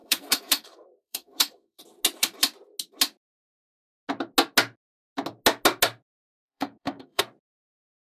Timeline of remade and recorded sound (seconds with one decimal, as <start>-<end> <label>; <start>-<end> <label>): 0.0-1.8 remade; 1.8-6.4 recorded; 6.4-7.2 remade; 7.2-8.1 recorded